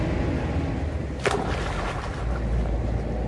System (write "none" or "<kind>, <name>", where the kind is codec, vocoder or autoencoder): none